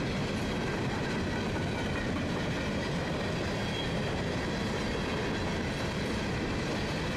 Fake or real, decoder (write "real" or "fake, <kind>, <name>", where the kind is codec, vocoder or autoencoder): real